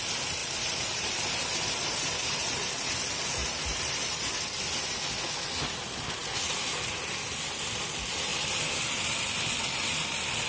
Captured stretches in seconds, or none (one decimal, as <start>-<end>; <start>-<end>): 0.0-0.4; 2.7-3.4; 4.3-10.5

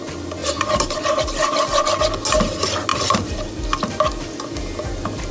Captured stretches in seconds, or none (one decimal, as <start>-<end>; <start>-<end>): 0.0-0.4; 2.0-2.9; 3.5-5.3